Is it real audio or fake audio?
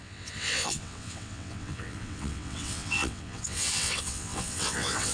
fake